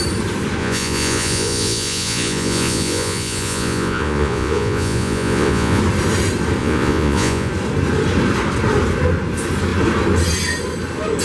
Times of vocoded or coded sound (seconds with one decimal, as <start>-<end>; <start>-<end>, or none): 0.6-5.8; 6.6-7.5